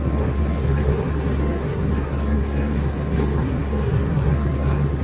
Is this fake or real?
fake